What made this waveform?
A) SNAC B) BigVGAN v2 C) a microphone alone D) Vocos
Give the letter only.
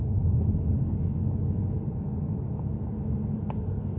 C